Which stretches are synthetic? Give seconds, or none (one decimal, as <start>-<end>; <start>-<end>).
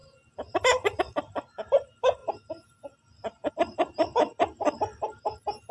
none